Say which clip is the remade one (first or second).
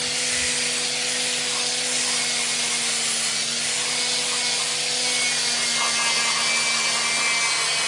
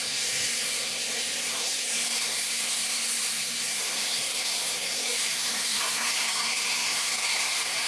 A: second